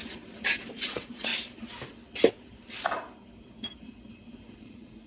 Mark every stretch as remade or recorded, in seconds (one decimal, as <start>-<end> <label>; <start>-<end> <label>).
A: 0.0-0.7 recorded; 0.7-1.3 remade; 1.3-4.4 recorded; 4.4-5.1 remade